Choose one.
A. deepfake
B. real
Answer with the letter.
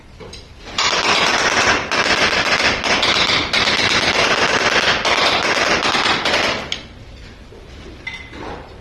B